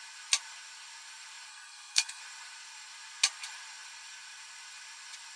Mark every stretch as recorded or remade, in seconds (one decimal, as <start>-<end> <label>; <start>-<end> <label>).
0.0-1.5 recorded; 1.5-2.2 remade; 2.2-5.4 recorded